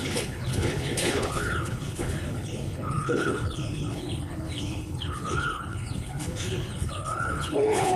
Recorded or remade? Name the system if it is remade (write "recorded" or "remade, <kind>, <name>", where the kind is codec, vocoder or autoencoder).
remade, codec, HILCodec